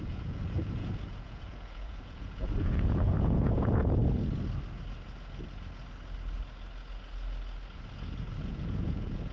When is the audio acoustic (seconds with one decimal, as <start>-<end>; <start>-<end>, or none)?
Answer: 4.0-8.5